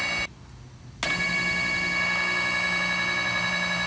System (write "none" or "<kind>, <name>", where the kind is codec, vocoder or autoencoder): none